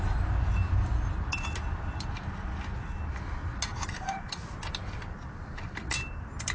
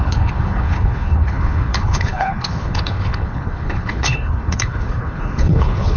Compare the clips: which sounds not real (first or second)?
second